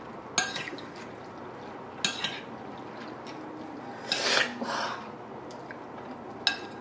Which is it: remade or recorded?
recorded